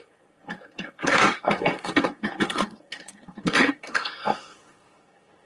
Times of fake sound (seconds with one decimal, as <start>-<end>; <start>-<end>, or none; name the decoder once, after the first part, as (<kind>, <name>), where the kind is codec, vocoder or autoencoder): 0.0-5.5 (codec, SNAC)